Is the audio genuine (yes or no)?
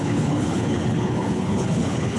no